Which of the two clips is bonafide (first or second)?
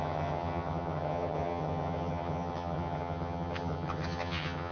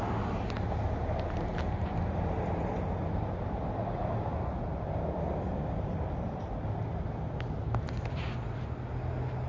second